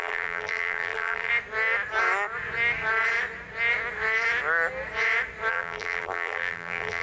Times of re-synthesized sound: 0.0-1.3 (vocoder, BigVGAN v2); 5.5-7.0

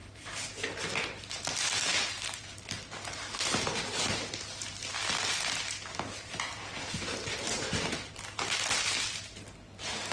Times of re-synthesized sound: none

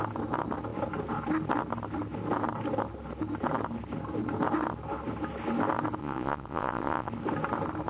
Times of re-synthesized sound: 6.0-7.1 (vocoder, Vocos)

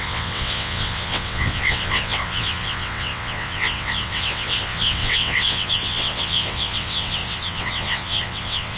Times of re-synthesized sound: 0.0-8.8 (vocoder, WaveNeXt)

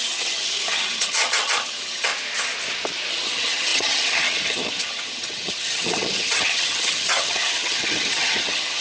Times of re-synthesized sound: 0.0-2.1 (vocoder, HiFi-GAN); 3.1-8.8

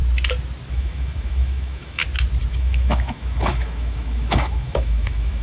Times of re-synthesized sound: 0.7-2.0 (autoencoder, DAC-VAE); 2.5-5.4